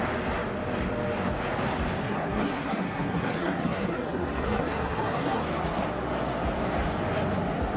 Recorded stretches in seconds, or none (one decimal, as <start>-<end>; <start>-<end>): 0.0-2.0; 5.4-7.8